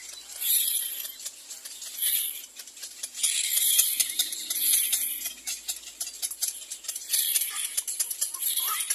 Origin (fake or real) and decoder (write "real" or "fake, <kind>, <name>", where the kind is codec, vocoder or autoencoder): fake, vocoder, BigVGAN v2